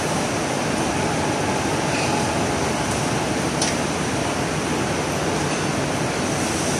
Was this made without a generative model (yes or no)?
yes